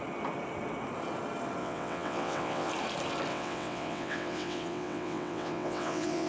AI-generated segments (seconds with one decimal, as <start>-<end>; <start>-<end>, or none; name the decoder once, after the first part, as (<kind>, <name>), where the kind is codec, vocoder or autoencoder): 1.6-2.7 (vocoder, WaveNeXt); 3.3-6.3